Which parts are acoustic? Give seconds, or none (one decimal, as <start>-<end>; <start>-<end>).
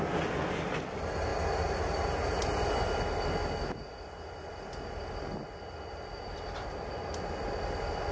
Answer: 0.0-8.1